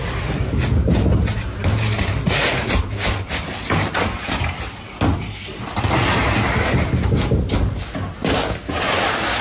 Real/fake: real